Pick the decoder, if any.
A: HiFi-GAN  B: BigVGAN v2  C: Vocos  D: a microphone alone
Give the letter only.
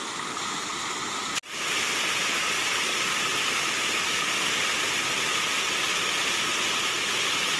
D